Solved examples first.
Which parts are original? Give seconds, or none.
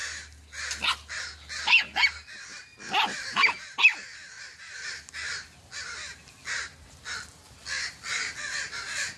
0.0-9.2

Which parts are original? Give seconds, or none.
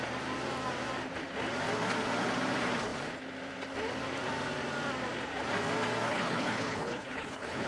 0.0-6.1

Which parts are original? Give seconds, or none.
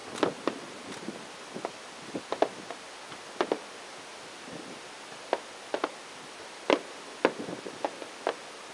0.0-8.7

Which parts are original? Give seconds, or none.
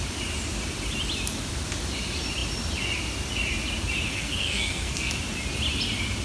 0.0-4.1; 5.1-6.2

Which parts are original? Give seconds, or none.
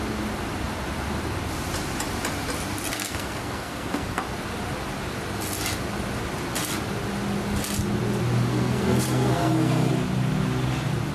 0.0-2.9; 4.2-8.5; 9.9-11.1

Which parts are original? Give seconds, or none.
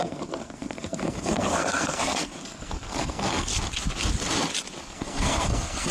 3.5-4.8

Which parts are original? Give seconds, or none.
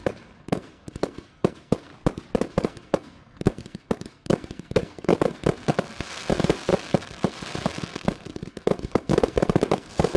1.9-2.4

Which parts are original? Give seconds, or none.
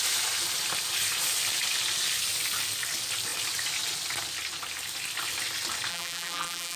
0.0-5.9